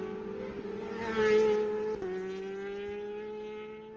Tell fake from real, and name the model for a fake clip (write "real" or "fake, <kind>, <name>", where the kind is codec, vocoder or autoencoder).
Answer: real